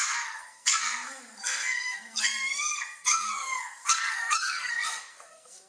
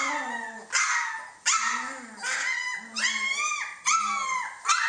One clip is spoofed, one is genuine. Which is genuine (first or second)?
second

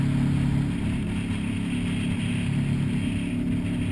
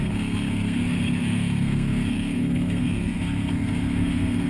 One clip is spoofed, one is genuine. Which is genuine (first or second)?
first